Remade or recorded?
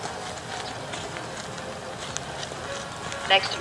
recorded